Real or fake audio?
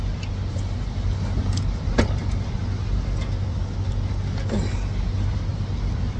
real